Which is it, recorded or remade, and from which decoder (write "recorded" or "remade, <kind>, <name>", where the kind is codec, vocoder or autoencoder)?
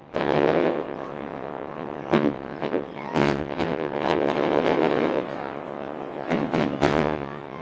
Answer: remade, vocoder, WaveNeXt